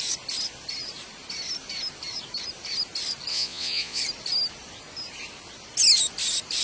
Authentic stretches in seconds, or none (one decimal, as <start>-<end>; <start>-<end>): 0.0-3.3; 4.0-6.6